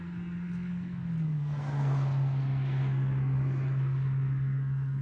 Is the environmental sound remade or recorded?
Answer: remade